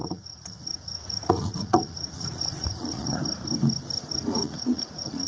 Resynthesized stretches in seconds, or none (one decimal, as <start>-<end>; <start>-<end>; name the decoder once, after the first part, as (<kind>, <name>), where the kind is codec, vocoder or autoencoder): 0.0-3.2 (vocoder, Vocos); 4.3-5.3